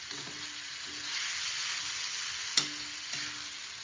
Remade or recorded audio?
recorded